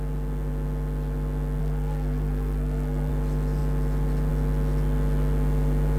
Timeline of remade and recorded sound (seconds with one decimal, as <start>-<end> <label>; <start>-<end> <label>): 0.0-1.6 recorded; 1.6-3.1 remade; 3.1-6.0 recorded